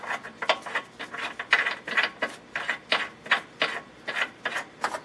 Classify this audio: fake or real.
real